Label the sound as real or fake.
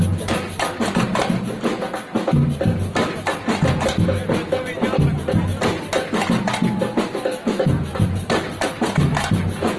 real